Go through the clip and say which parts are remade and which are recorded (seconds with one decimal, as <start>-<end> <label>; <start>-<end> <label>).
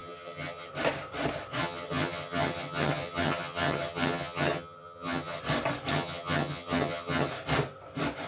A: 0.0-0.7 remade; 0.7-1.6 recorded; 1.6-5.4 remade; 5.4-5.9 recorded; 5.9-7.3 remade; 7.3-8.3 recorded